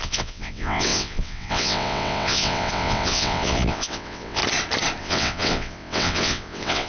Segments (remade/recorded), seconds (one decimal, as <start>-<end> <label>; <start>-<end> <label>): 0.0-4.4 remade; 4.4-5.0 recorded; 5.0-6.9 remade